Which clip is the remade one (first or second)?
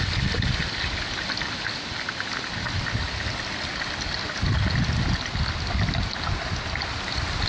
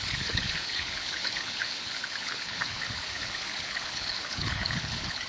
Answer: second